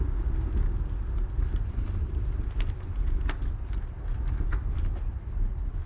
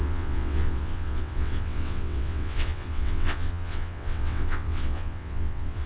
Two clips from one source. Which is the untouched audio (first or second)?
first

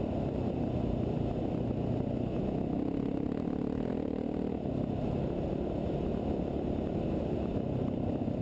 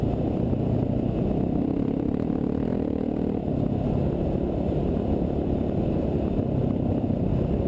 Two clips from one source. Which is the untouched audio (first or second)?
first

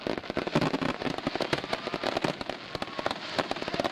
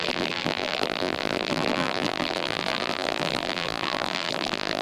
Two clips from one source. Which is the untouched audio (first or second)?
first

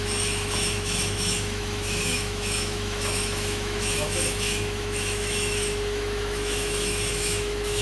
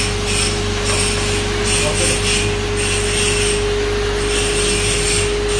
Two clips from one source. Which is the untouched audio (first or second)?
second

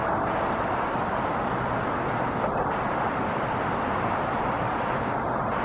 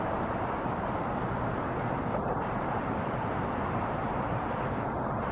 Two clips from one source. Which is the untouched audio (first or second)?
first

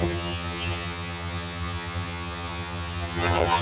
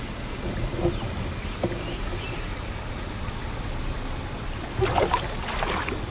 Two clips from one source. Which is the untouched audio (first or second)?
second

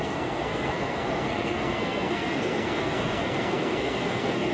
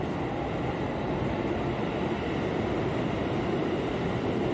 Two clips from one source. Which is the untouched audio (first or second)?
second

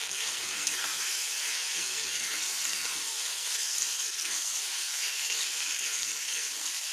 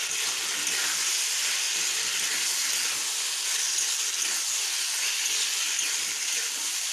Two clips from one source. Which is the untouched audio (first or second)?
second